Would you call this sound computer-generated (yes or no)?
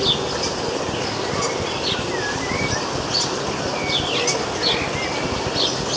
no